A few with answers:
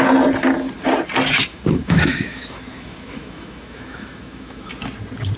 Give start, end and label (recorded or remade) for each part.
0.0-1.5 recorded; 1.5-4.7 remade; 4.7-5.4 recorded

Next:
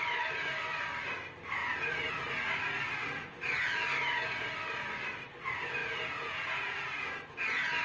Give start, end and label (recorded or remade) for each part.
0.0-5.8 recorded; 5.8-7.1 remade; 7.1-7.8 recorded

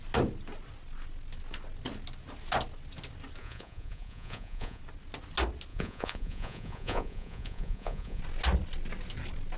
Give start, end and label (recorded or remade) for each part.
0.0-3.4 recorded; 3.4-4.8 remade; 4.8-5.7 recorded; 5.7-8.2 remade; 8.2-9.6 recorded

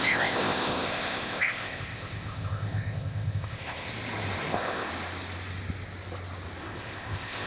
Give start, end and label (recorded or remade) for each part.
0.0-3.9 remade; 3.9-4.5 recorded; 4.5-4.9 remade; 4.9-6.6 recorded; 6.6-7.5 remade

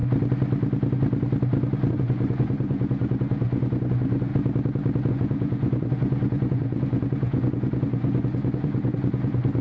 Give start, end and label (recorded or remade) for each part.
0.0-1.9 recorded; 1.9-4.3 remade; 4.3-5.1 recorded; 5.1-9.6 remade